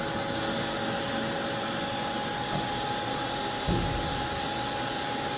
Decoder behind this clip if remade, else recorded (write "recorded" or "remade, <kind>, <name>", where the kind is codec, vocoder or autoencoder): recorded